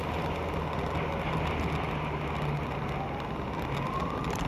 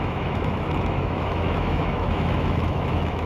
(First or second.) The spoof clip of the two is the second